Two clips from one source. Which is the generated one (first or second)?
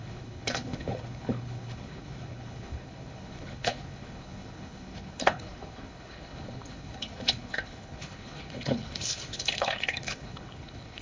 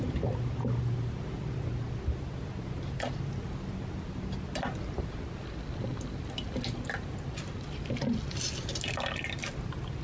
first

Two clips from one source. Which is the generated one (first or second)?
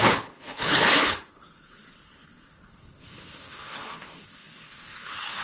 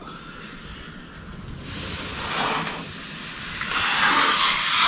first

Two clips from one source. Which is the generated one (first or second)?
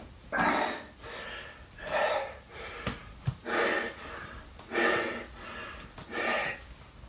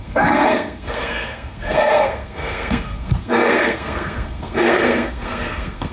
second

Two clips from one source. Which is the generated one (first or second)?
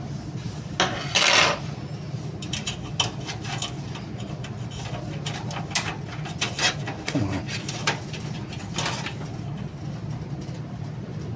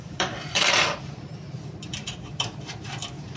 second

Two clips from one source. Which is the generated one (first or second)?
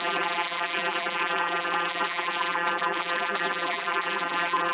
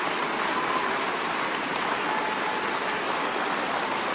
first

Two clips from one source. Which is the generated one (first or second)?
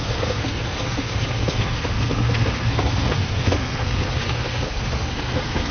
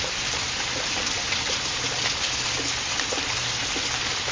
first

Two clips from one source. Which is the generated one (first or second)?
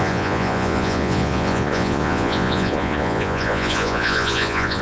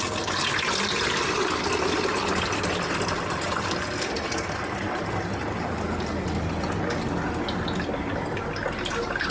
first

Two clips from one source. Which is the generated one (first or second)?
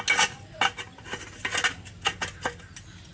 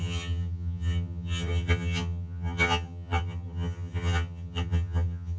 second